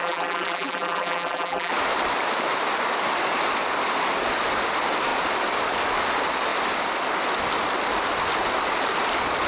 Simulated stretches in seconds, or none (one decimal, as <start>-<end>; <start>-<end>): 0.0-1.7